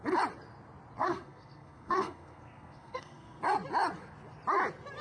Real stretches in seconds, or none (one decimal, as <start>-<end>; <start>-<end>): 0.0-1.0; 3.4-5.0